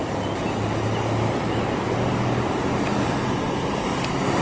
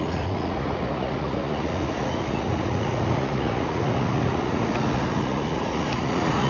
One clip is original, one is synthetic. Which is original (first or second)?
first